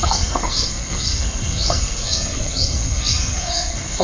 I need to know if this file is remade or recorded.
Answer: remade